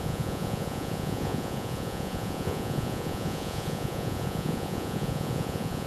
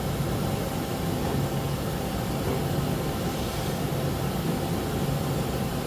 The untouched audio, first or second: second